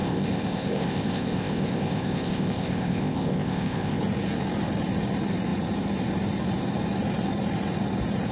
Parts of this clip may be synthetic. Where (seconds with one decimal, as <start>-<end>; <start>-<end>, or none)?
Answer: 0.0-4.0